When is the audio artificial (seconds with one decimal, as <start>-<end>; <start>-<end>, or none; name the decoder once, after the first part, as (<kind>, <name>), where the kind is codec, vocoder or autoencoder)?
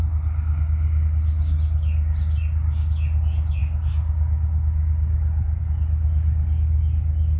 none